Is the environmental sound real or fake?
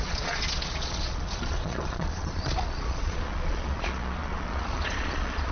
fake